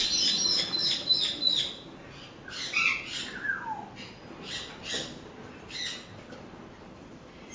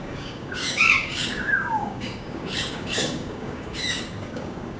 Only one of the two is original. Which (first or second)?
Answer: first